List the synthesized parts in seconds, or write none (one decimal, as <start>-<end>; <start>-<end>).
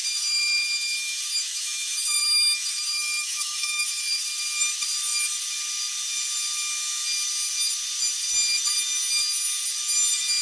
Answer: 0.0-4.2